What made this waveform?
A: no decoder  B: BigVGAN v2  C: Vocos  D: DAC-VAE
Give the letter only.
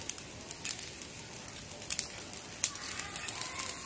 A